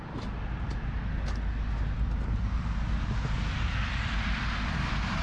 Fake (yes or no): no